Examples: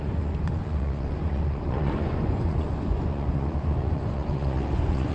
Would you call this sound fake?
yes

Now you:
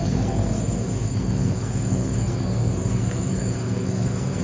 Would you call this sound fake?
yes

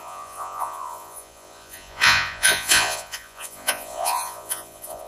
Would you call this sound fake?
yes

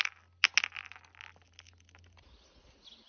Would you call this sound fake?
no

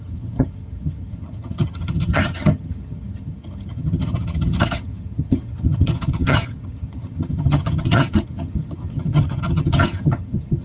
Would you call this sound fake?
yes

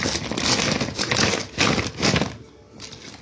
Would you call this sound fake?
no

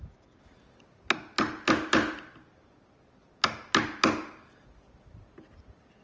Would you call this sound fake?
no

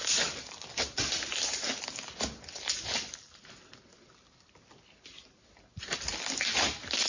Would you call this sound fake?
no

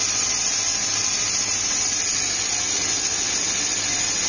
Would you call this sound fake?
no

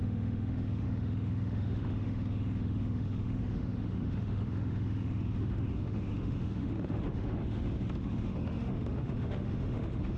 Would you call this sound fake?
yes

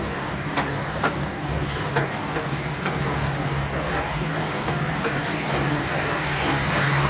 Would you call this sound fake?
yes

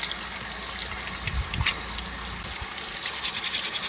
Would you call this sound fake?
no